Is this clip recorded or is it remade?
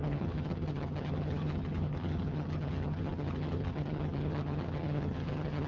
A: remade